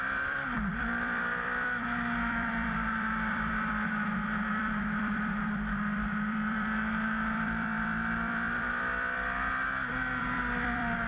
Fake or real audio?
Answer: fake